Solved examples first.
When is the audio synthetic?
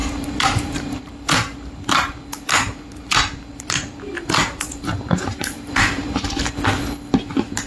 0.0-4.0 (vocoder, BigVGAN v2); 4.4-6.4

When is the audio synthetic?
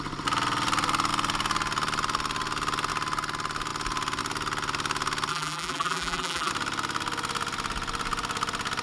5.3-6.5 (vocoder, BigVGAN v2)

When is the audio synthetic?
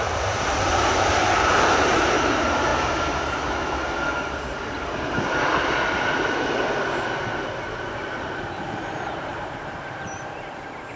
0.0-2.7 (vocoder, BigVGAN v2); 7.9-11.0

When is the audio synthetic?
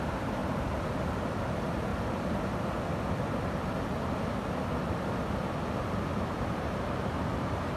0.0-0.4 (vocoder, BigVGAN v2); 1.4-1.9; 6.1-7.8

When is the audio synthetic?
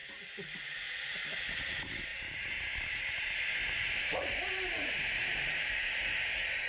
0.0-0.6 (vocoder, BigVGAN v2); 2.1-5.9